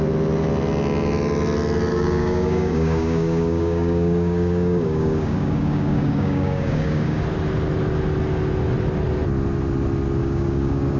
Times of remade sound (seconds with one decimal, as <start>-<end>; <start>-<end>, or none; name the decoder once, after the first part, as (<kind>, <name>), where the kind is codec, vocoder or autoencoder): 1.9-7.2 (codec, DAC); 10.2-11.0